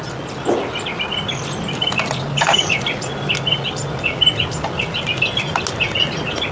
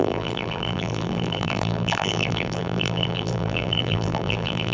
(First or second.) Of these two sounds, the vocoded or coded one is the second